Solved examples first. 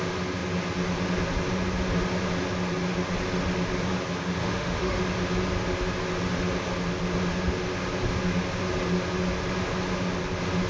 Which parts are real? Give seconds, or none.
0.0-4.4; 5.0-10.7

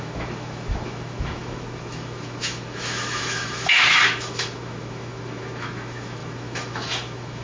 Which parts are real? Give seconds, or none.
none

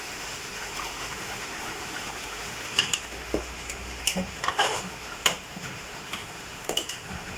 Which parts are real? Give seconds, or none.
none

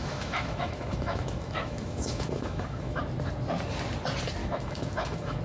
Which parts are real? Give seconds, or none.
3.0-4.4